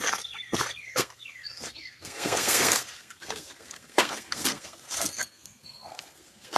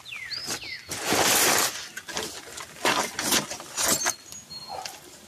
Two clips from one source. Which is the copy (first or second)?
first